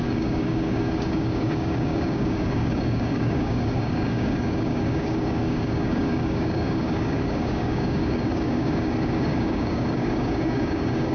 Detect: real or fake fake